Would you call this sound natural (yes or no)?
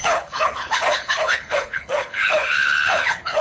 no